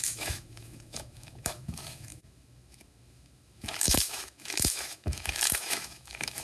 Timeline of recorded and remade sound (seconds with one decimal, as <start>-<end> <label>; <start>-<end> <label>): 0.0-6.4 remade